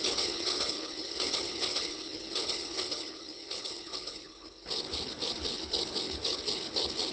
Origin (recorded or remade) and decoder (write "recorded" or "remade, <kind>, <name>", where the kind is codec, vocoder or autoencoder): remade, codec, HILCodec